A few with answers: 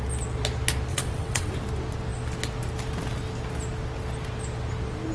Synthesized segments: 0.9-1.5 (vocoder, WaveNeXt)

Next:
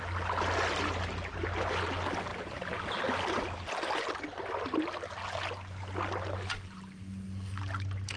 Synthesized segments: none

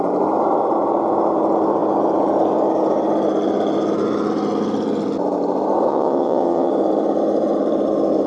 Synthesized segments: 5.9-6.7 (vocoder, WaveNeXt)

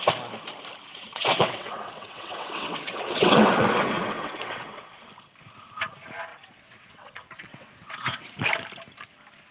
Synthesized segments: 0.9-5.0 (vocoder, WaveNeXt); 6.3-8.3

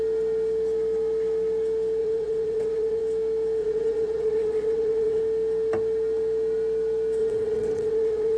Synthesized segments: 2.0-3.0 (vocoder, WaveNeXt); 3.6-5.2; 7.2-8.4

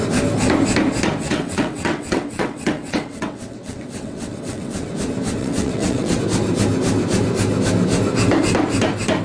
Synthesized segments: 1.2-4.9 (vocoder, WaveNeXt); 5.4-6.2